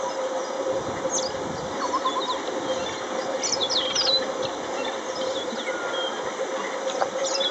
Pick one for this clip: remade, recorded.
recorded